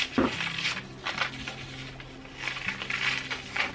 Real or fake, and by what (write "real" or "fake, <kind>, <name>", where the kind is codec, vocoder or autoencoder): real